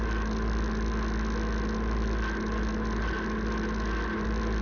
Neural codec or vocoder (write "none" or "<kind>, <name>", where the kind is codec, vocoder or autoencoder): none